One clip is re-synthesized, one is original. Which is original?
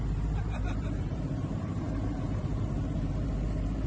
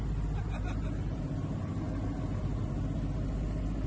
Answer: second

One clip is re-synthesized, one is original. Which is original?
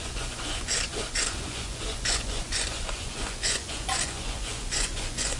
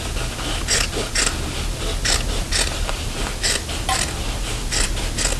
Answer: second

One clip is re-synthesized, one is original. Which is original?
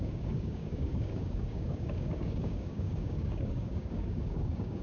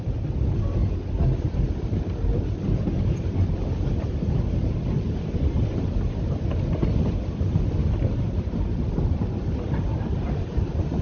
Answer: second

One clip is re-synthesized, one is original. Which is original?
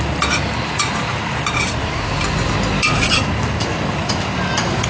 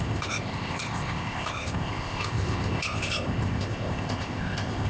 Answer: first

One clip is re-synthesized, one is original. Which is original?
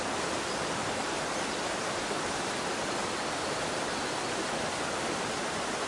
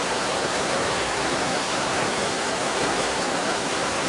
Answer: first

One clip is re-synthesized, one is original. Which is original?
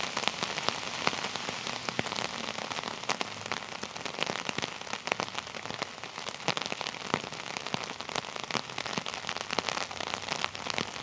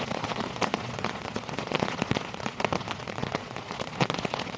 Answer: first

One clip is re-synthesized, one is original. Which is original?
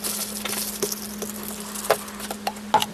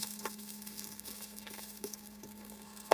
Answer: first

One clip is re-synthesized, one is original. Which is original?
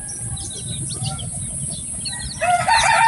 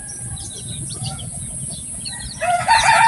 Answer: first